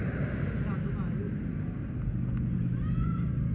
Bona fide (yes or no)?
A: yes